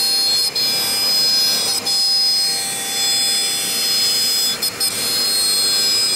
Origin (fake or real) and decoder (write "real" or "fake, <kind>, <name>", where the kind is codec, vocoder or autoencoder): real